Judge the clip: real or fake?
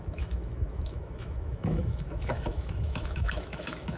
fake